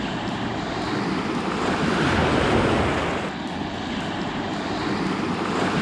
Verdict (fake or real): real